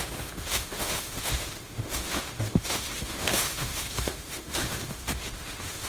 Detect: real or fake fake